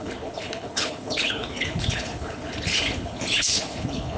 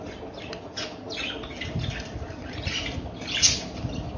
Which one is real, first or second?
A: second